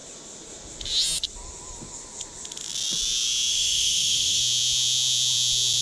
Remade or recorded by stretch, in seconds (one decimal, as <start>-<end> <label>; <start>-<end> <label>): 0.0-3.5 recorded; 3.5-4.4 remade; 4.4-5.8 recorded